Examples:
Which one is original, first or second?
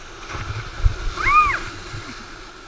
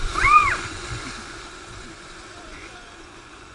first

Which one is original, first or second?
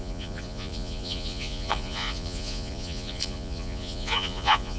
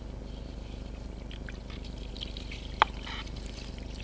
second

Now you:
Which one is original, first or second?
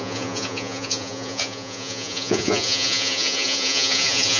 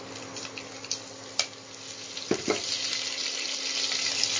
second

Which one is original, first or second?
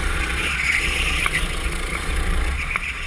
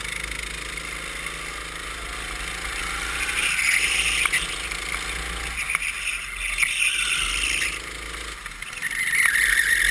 second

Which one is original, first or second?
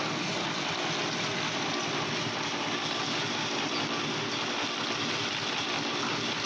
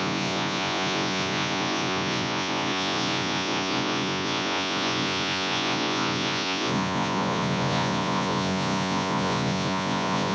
first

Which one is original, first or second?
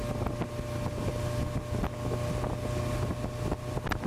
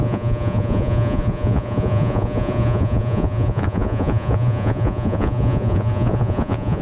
first